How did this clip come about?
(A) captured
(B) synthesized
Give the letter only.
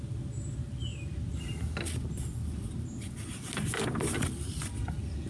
A